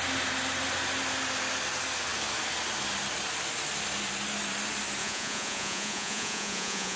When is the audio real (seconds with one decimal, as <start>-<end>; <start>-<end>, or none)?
0.0-5.0